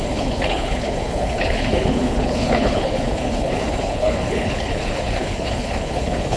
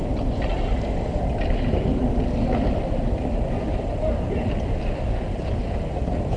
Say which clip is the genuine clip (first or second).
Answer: second